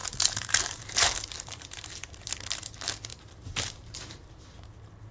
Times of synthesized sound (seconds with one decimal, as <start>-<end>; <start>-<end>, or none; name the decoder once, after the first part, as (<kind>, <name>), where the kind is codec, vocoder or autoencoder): 0.0-2.2 (vocoder, BigVGAN v2); 3.1-4.3